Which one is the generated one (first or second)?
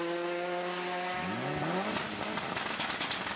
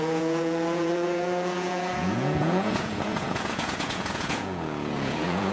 second